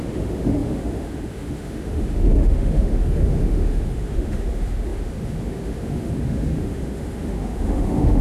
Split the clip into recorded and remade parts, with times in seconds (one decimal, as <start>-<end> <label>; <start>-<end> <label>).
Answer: 0.0-8.2 remade